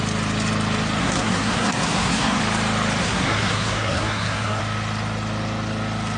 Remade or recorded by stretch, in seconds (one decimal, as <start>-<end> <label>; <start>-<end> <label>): 0.0-1.0 recorded; 1.0-2.4 remade; 2.4-3.0 recorded; 3.0-4.6 remade; 4.6-6.2 recorded